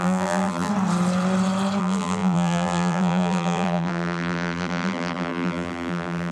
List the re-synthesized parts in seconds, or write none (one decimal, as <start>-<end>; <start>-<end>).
0.0-0.7; 1.8-6.3